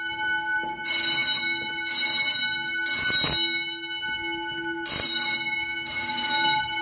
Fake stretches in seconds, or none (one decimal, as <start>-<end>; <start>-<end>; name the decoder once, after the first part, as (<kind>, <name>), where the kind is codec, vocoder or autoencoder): 5.6-6.8 (codec, DAC)